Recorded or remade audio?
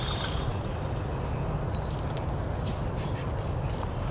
recorded